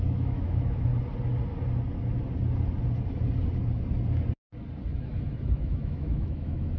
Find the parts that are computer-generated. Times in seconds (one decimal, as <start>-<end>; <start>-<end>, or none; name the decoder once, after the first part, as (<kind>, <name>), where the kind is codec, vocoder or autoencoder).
0.0-0.9 (autoencoder, DAC-VAE); 5.0-6.8